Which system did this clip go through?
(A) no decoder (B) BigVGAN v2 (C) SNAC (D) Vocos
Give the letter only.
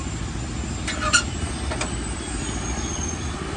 A